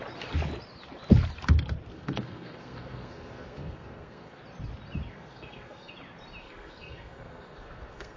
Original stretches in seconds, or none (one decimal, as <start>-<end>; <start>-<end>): 0.0-1.9; 4.4-5.1; 5.9-6.4